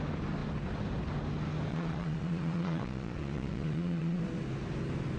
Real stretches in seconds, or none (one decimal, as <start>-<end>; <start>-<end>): 0.0-1.7; 4.2-5.2